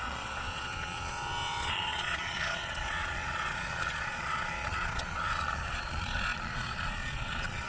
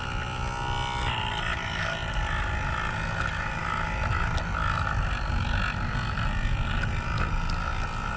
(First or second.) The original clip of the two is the second